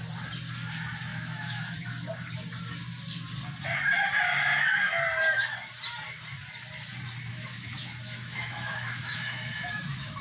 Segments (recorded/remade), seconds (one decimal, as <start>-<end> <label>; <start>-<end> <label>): 0.0-1.1 recorded; 1.1-1.9 remade; 1.9-7.3 recorded; 7.3-10.2 remade